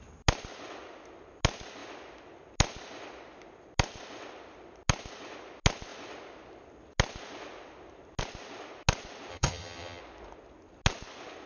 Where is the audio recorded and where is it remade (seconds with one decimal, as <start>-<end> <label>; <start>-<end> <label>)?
0.0-9.3 recorded; 9.3-10.0 remade; 10.0-11.5 recorded